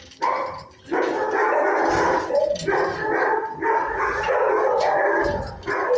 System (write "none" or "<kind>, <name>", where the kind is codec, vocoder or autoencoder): none